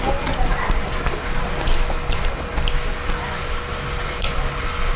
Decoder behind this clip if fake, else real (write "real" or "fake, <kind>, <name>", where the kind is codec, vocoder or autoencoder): real